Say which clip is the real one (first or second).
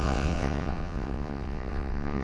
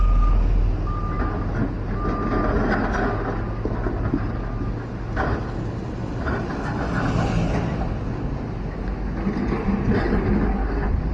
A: second